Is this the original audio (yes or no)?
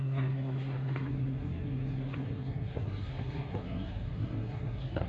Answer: no